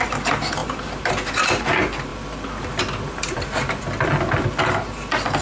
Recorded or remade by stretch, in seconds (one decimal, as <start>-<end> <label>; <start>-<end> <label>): 0.0-2.1 recorded; 2.1-3.8 remade; 3.8-5.4 recorded